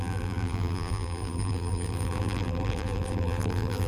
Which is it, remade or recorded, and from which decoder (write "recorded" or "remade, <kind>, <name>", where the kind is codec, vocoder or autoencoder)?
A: remade, vocoder, BigVGAN v2